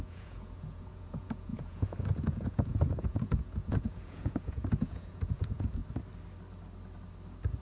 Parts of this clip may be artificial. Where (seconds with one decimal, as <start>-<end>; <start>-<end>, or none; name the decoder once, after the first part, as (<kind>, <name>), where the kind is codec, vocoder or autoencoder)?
0.0-5.8 (vocoder, Vocos)